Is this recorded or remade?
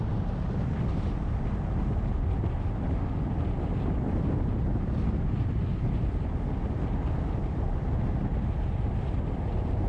recorded